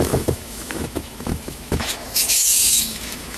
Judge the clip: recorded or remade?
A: remade